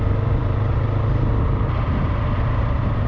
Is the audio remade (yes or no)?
no